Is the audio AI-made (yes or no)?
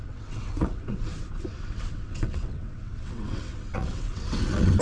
yes